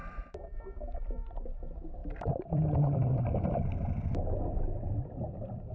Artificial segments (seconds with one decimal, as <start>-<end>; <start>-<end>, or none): 0.0-0.6; 2.0-5.7